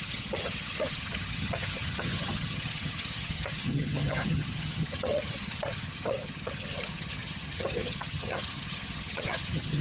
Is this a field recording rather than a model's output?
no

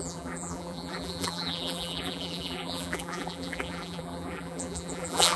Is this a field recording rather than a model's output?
no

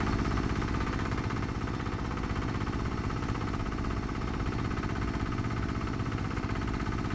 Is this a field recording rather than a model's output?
yes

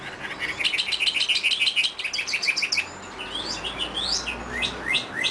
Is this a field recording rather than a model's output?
yes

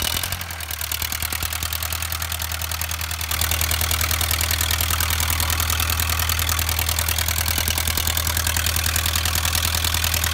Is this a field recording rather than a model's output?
yes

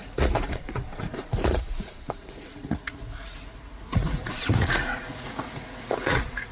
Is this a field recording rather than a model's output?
no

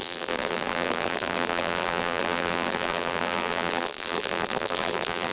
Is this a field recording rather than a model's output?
no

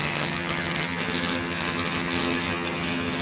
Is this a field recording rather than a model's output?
no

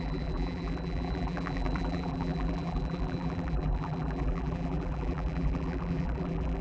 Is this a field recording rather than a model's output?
no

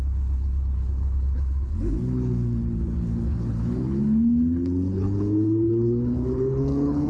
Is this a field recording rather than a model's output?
no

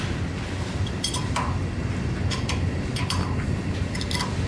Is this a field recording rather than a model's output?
yes